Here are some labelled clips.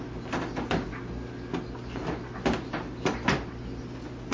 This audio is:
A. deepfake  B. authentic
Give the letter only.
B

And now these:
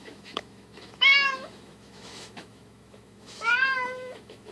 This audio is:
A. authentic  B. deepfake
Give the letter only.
B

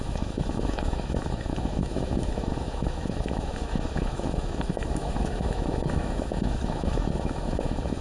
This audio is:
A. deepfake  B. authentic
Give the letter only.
A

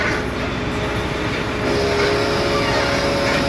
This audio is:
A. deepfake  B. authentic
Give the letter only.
B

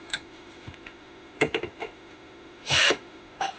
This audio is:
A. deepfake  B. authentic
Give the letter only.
A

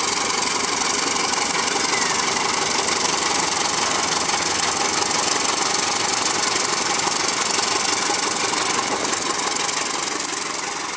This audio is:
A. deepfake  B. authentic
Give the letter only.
B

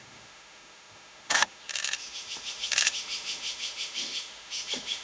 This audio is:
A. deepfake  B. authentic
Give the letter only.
A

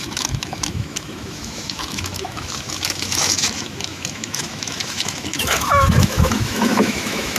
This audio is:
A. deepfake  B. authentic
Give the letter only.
A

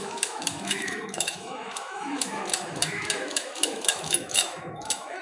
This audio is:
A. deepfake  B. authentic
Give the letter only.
A